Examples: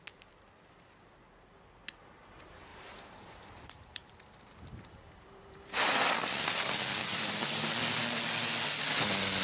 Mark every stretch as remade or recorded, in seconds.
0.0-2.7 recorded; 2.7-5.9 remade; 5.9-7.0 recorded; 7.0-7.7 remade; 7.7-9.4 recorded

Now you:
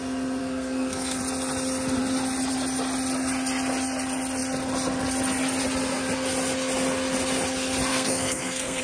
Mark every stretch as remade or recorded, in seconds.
0.0-0.4 recorded; 0.4-1.2 remade; 1.2-7.9 recorded; 7.9-8.8 remade

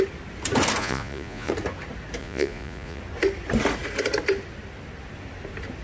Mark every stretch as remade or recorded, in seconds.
0.0-0.8 recorded; 0.8-1.5 remade; 1.5-2.2 recorded; 2.2-3.0 remade; 3.0-5.8 recorded

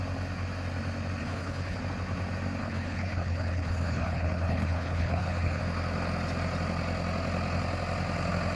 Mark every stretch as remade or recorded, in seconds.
0.0-1.2 recorded; 1.2-1.8 remade; 1.8-2.6 recorded; 2.6-5.6 remade; 5.6-8.6 recorded

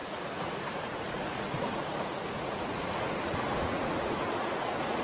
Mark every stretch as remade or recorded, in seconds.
0.0-5.0 remade

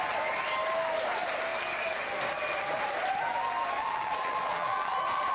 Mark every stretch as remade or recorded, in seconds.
0.0-3.8 recorded; 3.8-5.3 remade

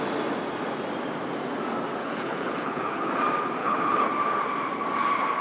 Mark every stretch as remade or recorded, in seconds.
0.0-2.0 recorded; 2.0-3.1 remade; 3.1-3.6 recorded; 3.6-4.1 remade; 4.1-5.4 recorded

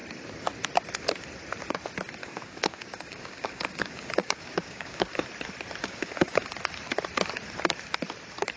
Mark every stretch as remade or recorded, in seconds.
0.0-2.2 recorded; 2.2-5.2 remade; 5.2-5.8 recorded; 5.8-6.5 remade; 6.5-8.6 recorded